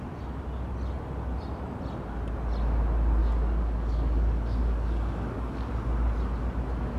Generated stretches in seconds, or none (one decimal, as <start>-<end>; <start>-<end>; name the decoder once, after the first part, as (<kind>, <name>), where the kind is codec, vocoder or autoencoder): 3.2-5.7 (codec, DAC)

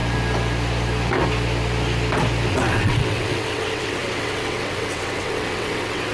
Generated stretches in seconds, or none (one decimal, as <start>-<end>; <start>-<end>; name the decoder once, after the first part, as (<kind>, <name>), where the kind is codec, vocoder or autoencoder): 2.5-6.1 (vocoder, WaveNeXt)

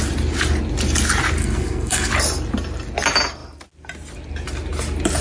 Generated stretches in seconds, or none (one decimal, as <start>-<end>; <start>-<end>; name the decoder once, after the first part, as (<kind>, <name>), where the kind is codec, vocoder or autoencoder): 1.4-2.1 (codec, SNAC)

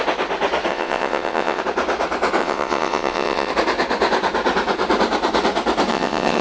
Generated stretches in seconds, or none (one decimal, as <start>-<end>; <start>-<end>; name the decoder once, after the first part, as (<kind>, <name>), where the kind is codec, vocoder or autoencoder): 0.7-1.6 (vocoder, WaveNeXt); 2.4-3.5; 5.9-6.4